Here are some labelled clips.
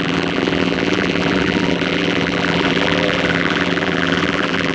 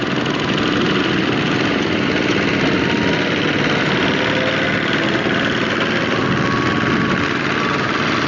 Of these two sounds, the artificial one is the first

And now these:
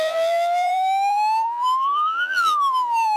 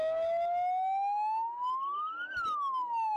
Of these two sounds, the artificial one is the first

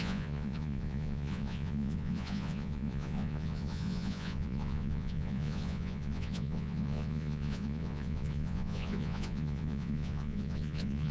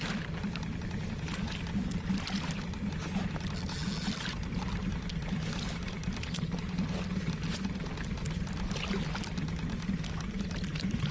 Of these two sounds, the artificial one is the first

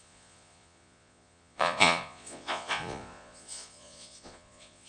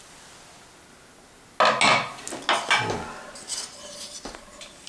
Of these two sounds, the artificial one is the first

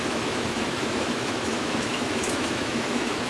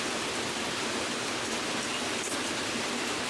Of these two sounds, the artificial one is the first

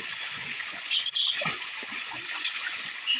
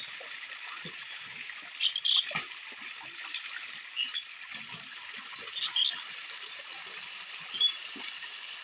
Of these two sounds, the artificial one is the first